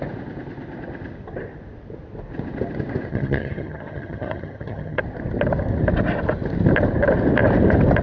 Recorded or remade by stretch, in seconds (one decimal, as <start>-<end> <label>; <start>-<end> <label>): 0.0-3.1 recorded; 3.1-5.0 remade; 5.0-8.0 recorded